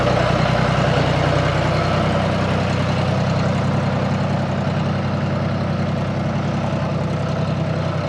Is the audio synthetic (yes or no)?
no